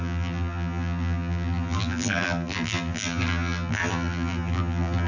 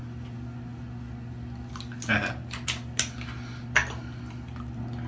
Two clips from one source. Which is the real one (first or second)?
second